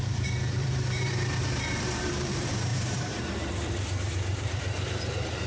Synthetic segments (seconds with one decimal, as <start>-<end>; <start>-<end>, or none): 0.0-5.5

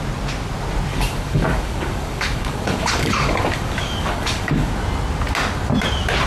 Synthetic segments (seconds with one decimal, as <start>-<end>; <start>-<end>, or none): 0.9-4.7

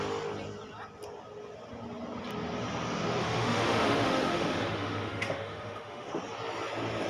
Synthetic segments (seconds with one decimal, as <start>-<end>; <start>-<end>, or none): 3.2-6.2